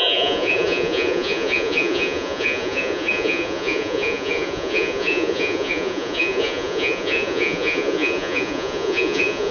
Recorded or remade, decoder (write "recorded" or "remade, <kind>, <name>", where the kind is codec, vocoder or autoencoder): remade, vocoder, Vocos